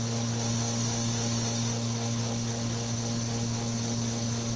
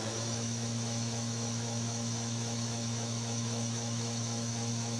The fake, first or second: second